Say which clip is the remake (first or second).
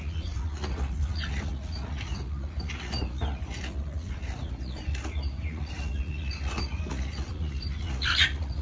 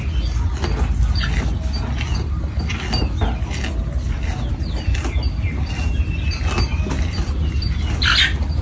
first